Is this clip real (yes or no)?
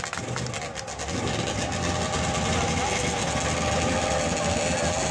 yes